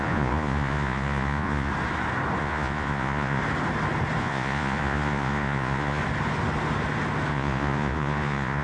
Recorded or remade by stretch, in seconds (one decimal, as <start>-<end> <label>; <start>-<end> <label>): 0.0-1.7 remade; 1.7-2.4 recorded; 2.4-3.4 remade; 3.4-4.2 recorded; 4.2-6.0 remade; 6.0-7.3 recorded; 7.3-8.6 remade